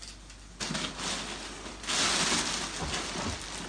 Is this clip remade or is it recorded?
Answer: recorded